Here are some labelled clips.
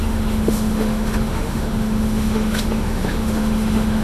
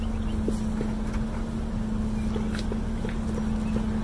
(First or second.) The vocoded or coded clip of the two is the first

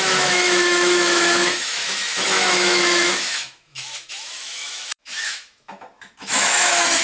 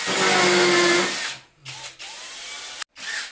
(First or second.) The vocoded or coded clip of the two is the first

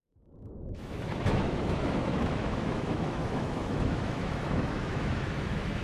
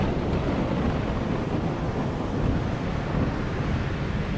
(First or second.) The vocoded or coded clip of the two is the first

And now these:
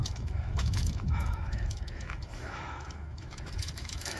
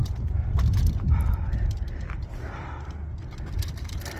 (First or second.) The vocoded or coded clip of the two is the first